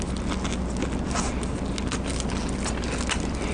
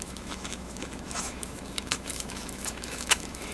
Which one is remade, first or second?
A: second